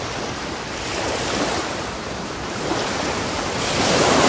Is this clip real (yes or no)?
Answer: no